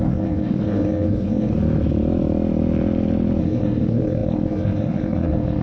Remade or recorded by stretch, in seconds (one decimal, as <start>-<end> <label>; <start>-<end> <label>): 0.0-1.5 remade; 1.5-3.4 recorded; 3.4-5.6 remade